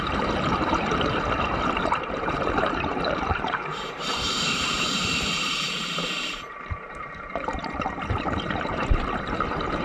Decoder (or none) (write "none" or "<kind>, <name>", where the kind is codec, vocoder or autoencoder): vocoder, BigVGAN v2